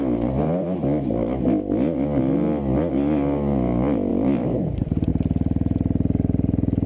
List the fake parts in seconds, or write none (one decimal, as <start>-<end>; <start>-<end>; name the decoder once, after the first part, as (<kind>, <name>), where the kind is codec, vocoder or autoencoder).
4.1-5.1 (vocoder, BigVGAN v2)